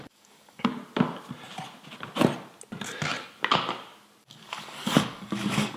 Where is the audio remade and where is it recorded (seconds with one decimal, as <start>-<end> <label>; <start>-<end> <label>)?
0.0-0.7 remade; 0.7-4.2 recorded; 4.2-5.8 remade